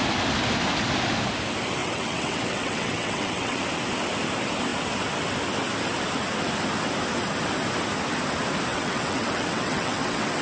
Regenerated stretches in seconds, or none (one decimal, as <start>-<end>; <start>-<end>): 1.8-3.6; 8.7-10.4